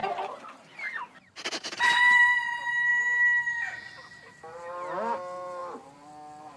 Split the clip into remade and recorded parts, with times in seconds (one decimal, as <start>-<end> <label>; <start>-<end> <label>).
0.0-6.6 recorded